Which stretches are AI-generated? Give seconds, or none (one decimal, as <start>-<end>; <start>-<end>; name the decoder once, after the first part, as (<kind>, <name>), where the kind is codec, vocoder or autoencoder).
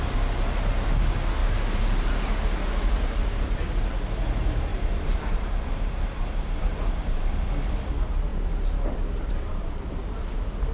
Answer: 1.4-2.1 (vocoder, BigVGAN v2); 4.7-7.5; 8.3-9.8